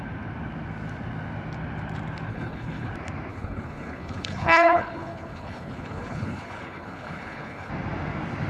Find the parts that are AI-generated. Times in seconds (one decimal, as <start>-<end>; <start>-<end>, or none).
2.3-2.9; 3.3-7.7